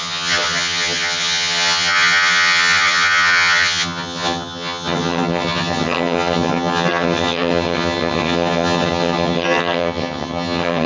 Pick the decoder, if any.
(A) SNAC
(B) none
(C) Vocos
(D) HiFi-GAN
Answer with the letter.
D